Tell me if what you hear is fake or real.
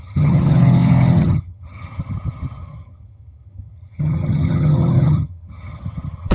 fake